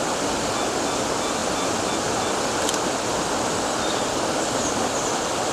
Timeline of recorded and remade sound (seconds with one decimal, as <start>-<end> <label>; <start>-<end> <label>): 0.0-5.5 recorded